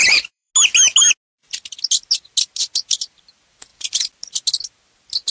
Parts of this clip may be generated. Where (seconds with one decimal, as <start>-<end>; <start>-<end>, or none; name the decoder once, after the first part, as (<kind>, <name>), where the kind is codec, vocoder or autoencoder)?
0.0-0.5 (vocoder, BigVGAN v2); 3.7-4.2